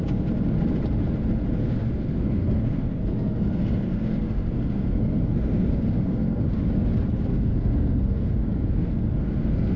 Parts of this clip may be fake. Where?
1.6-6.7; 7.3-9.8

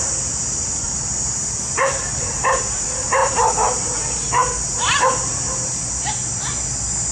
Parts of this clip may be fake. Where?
none

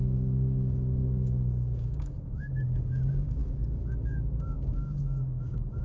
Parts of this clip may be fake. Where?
0.0-5.8

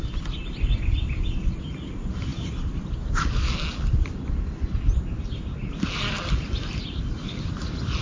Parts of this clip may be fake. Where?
none

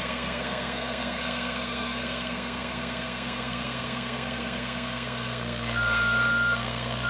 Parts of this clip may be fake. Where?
0.0-7.1